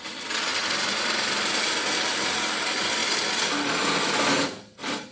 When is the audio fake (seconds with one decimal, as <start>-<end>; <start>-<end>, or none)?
none